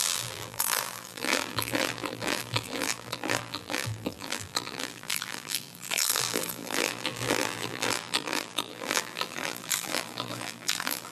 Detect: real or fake fake